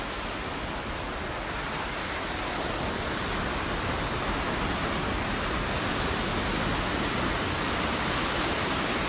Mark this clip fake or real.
real